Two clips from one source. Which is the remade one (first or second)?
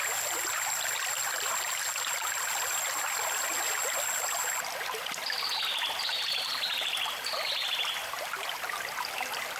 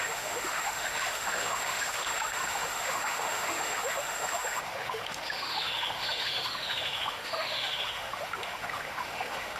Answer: second